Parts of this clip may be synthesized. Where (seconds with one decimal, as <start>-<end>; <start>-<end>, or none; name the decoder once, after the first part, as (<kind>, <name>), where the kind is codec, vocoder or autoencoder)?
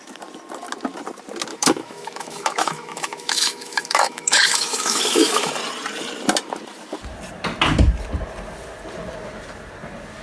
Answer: 1.5-5.5 (autoencoder, DAC-VAE)